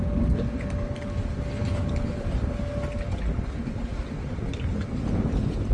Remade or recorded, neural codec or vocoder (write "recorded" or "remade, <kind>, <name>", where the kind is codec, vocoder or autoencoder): recorded